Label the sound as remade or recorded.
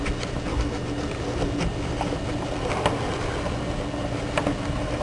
recorded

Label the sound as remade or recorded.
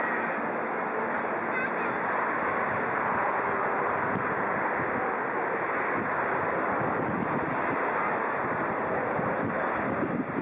recorded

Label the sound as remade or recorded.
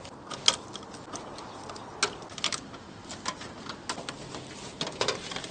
recorded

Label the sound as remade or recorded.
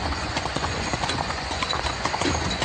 remade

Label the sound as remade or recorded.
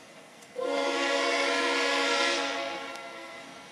remade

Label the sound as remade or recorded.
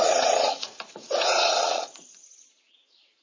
remade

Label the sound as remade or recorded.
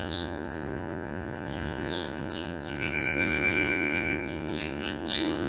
remade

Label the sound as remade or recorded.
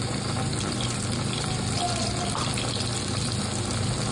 recorded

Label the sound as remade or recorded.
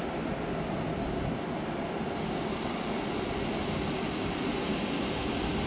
recorded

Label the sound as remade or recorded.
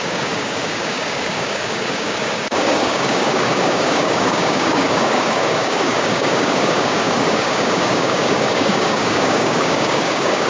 remade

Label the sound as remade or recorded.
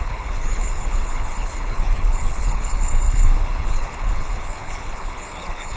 remade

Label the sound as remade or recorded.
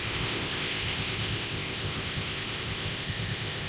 remade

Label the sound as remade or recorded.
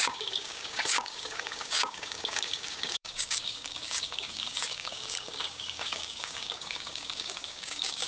remade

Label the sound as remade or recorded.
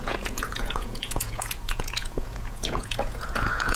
remade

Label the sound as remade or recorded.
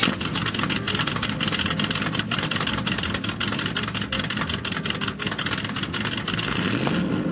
recorded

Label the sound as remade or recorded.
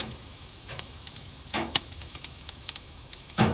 remade